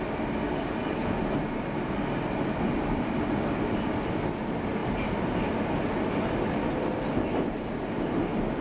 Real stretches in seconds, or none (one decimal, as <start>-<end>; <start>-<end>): 0.0-8.6